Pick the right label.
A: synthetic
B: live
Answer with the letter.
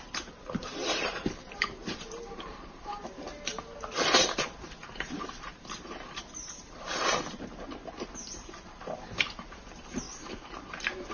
A